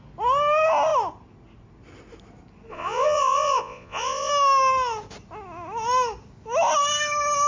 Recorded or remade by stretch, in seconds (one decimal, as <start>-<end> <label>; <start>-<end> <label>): 0.0-2.7 recorded; 2.7-4.3 remade; 4.3-7.5 recorded